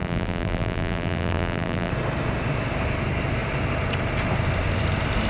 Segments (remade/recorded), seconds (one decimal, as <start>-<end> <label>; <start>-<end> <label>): 0.0-1.9 remade; 1.9-5.3 recorded